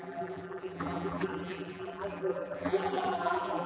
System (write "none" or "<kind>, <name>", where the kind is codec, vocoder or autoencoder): vocoder, BigVGAN v2